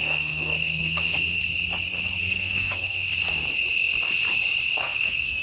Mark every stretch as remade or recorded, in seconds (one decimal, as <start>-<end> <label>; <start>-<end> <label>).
0.0-1.4 remade; 1.4-2.2 recorded; 2.2-3.1 remade; 3.1-4.8 recorded; 4.8-5.4 remade